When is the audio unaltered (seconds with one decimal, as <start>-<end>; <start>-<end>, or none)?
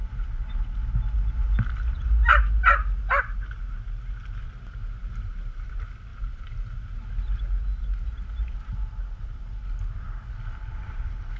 0.0-11.4